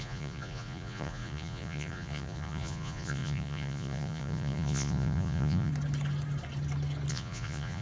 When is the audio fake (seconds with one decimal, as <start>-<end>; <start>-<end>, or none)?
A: 0.0-5.7; 7.1-7.8